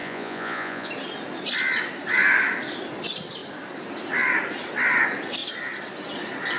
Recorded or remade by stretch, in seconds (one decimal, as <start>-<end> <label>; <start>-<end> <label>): 0.0-0.9 remade; 0.9-6.6 recorded